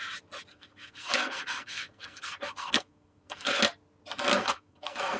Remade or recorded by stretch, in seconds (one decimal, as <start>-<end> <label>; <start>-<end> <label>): 0.0-0.5 recorded; 0.5-3.6 remade; 3.6-4.3 recorded; 4.3-5.2 remade